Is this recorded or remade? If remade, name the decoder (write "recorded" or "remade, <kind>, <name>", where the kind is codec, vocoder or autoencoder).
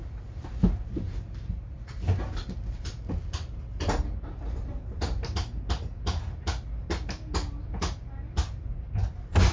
recorded